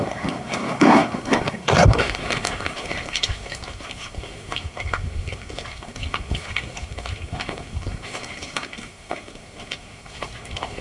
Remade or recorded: remade